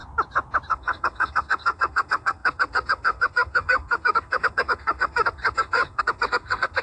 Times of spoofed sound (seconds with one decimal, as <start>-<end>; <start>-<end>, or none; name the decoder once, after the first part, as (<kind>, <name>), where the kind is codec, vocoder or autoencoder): 0.7-6.8 (codec, SNAC)